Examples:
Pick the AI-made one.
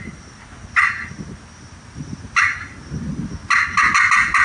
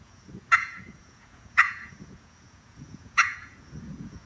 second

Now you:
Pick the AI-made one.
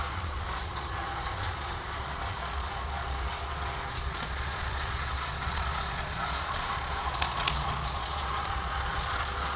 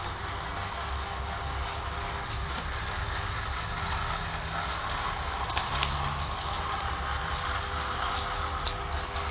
first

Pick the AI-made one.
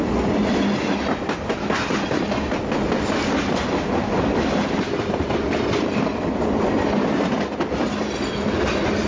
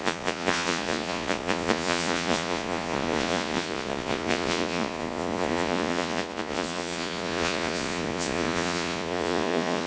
second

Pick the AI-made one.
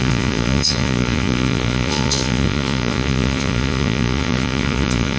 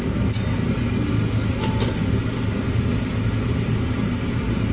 first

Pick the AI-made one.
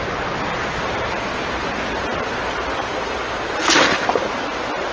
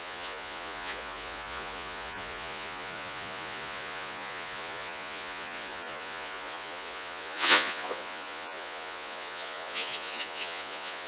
second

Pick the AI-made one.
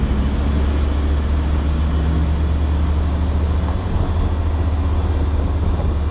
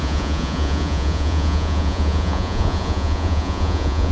second